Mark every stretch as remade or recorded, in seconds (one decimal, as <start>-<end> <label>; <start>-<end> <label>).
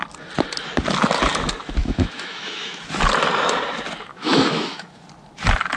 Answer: 0.0-1.8 recorded; 1.8-2.9 remade; 2.9-4.1 recorded; 4.1-5.0 remade; 5.0-5.8 recorded